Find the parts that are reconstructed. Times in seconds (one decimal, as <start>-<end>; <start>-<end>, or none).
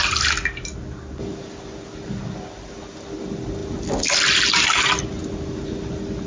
none